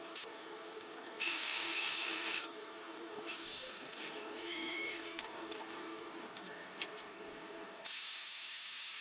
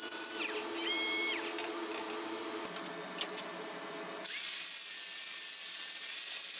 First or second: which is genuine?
second